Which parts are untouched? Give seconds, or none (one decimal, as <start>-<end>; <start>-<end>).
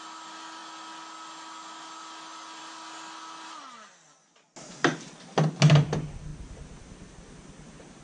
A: 0.0-8.0